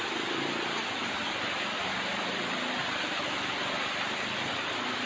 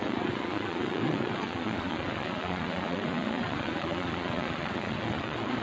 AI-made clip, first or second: second